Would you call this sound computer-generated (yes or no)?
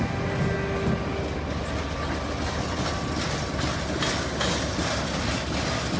no